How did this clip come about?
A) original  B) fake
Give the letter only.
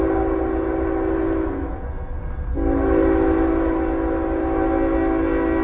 A